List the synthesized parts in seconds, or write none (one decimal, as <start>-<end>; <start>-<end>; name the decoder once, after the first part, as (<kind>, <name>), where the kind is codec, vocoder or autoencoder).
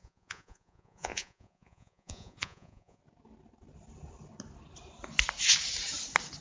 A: 0.0-3.0 (vocoder, Vocos)